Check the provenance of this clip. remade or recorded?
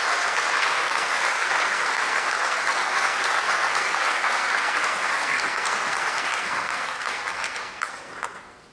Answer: remade